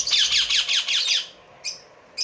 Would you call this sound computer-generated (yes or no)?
no